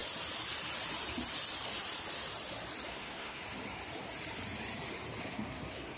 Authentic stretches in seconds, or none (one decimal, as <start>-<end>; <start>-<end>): 0.0-2.9; 3.4-5.2